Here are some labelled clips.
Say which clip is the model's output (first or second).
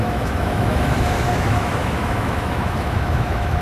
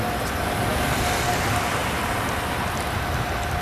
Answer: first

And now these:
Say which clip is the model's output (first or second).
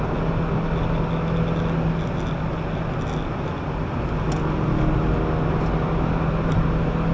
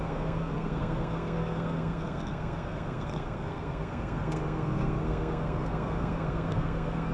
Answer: second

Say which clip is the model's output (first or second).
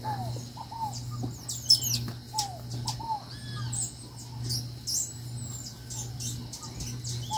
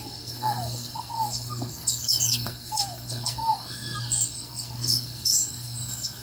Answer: second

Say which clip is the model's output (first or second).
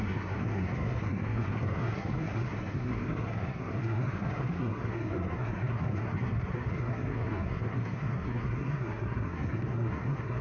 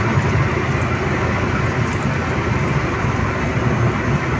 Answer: first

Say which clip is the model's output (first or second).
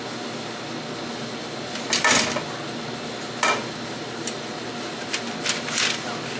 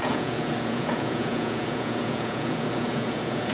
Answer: second